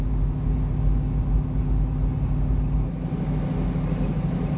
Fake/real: real